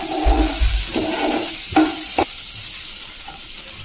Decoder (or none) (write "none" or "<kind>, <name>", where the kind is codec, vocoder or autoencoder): none